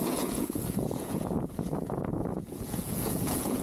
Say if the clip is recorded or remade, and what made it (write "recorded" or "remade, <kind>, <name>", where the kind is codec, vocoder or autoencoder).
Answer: remade, vocoder, Vocos